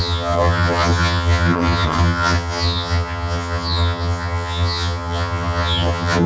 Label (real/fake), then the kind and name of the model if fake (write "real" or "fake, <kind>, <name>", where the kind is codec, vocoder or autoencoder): fake, vocoder, HiFi-GAN